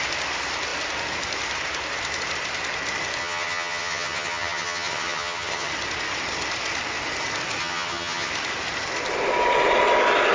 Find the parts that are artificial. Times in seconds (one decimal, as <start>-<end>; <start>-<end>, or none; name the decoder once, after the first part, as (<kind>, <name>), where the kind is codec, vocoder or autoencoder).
3.2-5.7 (vocoder, HiFi-GAN); 7.6-8.3